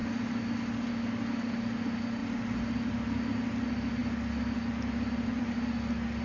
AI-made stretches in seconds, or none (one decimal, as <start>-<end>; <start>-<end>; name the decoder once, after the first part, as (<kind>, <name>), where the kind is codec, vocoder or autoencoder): none